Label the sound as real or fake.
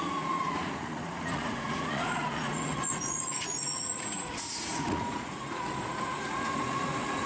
fake